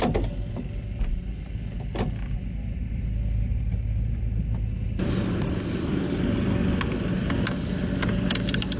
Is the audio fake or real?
real